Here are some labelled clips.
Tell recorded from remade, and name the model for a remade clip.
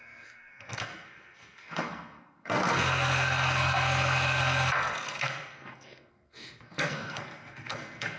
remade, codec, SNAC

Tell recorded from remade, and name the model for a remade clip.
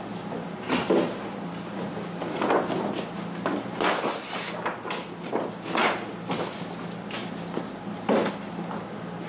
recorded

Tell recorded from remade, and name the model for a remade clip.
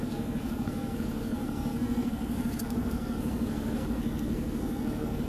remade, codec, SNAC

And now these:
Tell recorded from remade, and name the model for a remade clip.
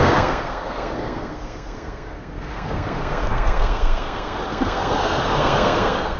remade, codec, SNAC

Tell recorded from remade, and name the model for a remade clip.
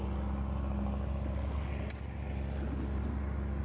recorded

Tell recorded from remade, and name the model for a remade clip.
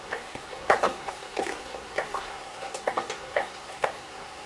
remade, codec, SNAC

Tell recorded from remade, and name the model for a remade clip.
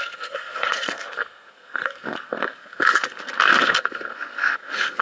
remade, codec, SNAC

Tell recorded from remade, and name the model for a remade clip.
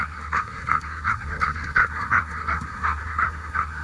remade, codec, SNAC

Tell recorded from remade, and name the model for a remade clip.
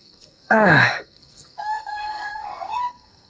remade, codec, SNAC